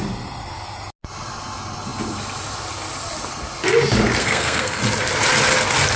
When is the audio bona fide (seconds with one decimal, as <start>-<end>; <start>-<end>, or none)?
0.0-4.2; 4.8-6.0